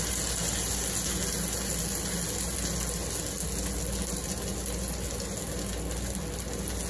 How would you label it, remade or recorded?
recorded